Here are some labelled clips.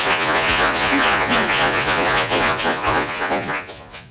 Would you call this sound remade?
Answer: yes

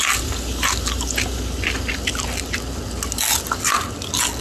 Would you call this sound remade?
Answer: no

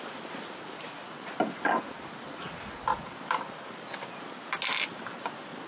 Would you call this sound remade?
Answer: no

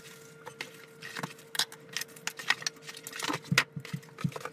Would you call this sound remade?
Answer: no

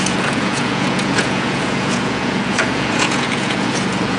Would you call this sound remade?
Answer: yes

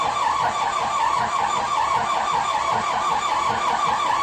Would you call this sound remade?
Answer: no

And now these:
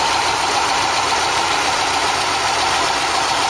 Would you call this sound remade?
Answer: no